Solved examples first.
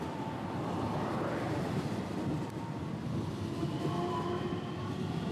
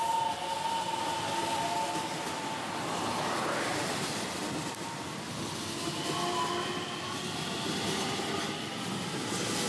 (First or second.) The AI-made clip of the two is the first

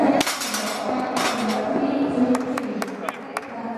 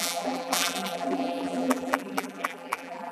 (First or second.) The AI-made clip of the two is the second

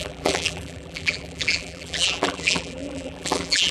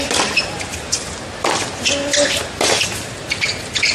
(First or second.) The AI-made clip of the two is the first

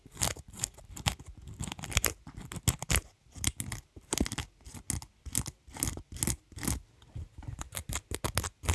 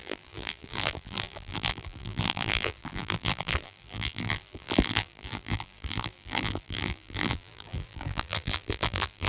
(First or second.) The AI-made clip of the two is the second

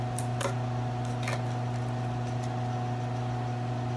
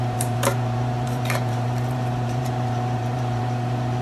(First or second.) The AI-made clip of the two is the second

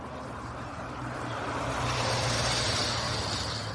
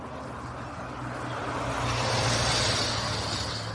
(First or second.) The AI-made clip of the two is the first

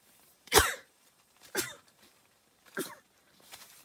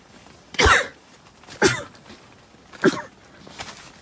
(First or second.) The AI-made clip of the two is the first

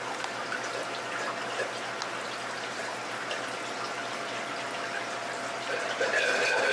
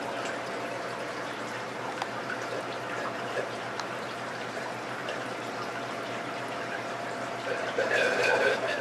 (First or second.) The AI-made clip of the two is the second